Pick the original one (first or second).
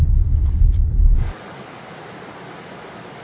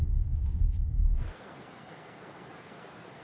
first